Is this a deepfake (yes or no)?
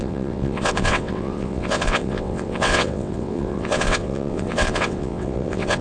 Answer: yes